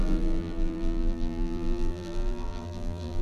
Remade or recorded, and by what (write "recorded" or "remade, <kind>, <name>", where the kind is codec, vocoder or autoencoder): remade, vocoder, BigVGAN v2